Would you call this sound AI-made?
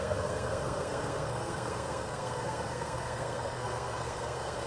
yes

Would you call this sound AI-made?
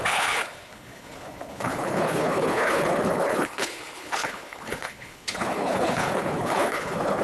yes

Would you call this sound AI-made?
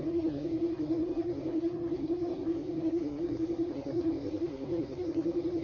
yes